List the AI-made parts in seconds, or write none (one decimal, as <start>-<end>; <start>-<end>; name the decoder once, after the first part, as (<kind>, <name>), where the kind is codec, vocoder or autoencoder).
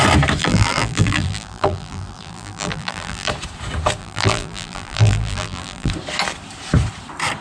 0.4-3.3 (vocoder, BigVGAN v2); 4.0-5.9